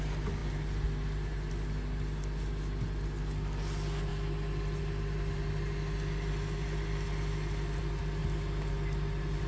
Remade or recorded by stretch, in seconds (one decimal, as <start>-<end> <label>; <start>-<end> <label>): 0.0-9.5 recorded